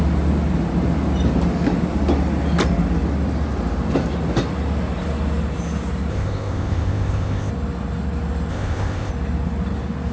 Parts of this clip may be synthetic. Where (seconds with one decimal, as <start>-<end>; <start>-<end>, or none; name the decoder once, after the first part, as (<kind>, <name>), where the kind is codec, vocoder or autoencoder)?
6.1-7.5 (codec, ZipCodec); 8.5-9.1